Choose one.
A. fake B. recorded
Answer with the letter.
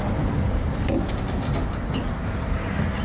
B